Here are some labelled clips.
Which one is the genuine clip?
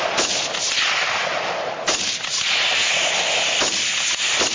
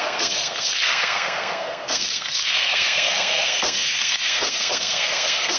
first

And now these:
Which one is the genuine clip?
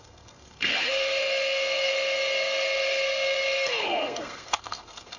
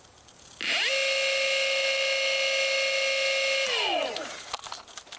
second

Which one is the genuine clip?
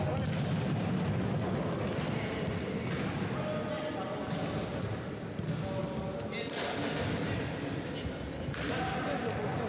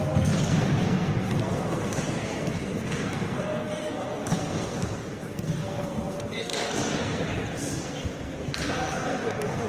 first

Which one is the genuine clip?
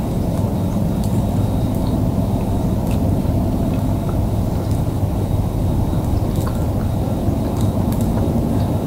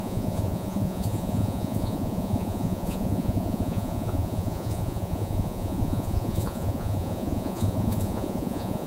first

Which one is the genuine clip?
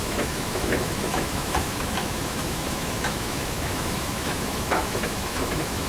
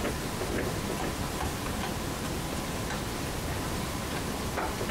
second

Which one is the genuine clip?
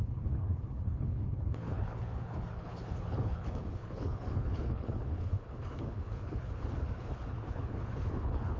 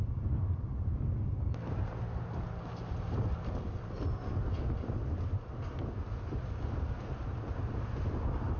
second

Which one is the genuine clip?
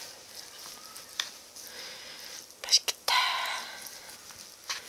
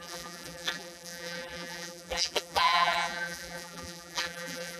first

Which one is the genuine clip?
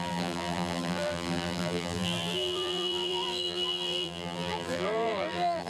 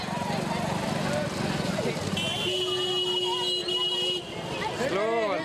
second